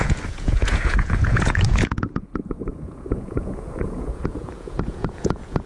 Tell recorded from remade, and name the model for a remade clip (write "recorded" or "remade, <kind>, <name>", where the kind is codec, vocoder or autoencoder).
remade, vocoder, Vocos